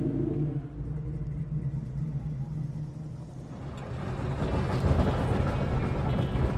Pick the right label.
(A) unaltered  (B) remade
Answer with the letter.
A